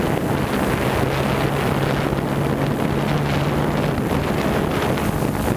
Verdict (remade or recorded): recorded